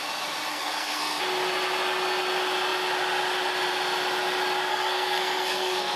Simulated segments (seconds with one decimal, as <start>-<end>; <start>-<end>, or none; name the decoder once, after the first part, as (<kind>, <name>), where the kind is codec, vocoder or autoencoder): 0.5-1.2 (codec, SNAC); 4.7-6.0